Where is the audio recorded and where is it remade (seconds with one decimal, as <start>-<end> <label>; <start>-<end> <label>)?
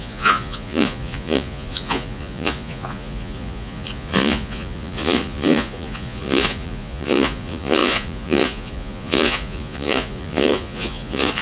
0.0-11.4 remade